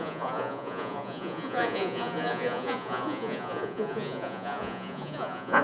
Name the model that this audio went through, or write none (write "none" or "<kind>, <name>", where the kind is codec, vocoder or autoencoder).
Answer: vocoder, Vocos